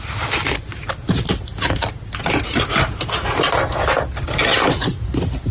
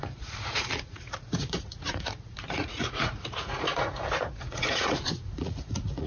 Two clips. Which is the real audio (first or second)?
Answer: first